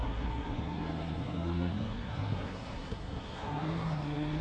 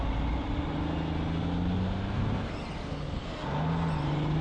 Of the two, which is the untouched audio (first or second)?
second